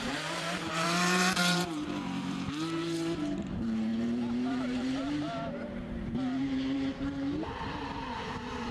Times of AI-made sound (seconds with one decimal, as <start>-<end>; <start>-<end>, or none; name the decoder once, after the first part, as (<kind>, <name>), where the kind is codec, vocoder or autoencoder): 0.0-3.9 (vocoder, BigVGAN v2); 4.5-8.7